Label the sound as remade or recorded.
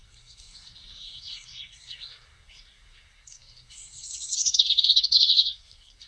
remade